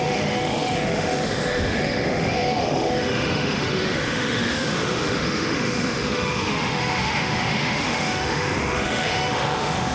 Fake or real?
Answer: fake